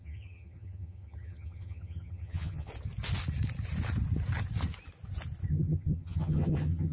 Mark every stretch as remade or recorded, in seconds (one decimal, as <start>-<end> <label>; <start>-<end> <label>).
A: 0.0-2.7 remade; 2.7-5.5 recorded; 5.5-6.9 remade